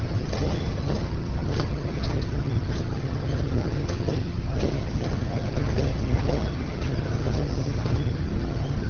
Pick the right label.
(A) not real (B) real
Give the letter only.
A